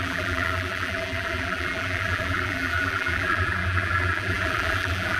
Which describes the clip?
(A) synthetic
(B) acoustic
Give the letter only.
A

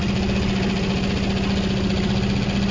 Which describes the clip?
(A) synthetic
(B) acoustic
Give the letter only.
B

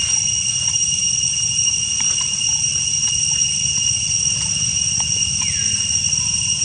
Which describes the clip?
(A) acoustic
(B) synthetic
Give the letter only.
A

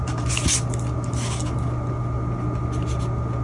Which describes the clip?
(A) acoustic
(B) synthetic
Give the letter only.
A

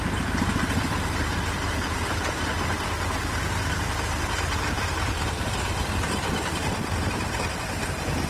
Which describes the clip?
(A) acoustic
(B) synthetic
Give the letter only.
B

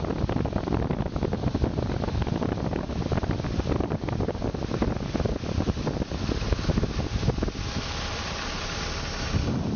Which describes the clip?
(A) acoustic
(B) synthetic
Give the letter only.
A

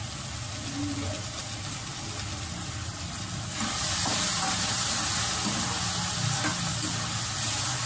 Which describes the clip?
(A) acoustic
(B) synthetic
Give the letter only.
A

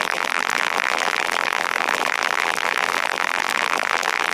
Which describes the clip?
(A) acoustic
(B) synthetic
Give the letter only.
B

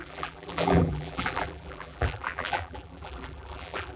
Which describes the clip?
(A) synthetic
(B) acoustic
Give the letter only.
A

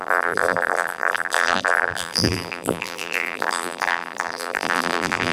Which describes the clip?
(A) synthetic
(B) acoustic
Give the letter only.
A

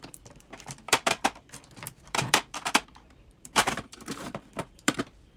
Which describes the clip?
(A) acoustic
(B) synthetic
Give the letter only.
B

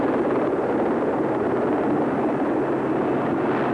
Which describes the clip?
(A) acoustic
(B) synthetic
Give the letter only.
A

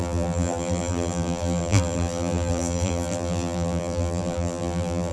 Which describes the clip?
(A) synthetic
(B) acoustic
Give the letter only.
A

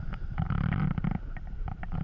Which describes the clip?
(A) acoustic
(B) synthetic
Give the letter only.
B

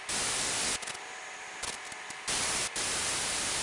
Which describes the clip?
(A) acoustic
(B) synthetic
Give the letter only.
A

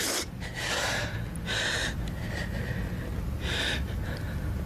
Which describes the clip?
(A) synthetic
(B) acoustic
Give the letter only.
B